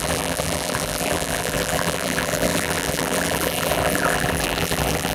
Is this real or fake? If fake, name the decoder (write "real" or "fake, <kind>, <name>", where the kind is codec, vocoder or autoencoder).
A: fake, vocoder, BigVGAN v2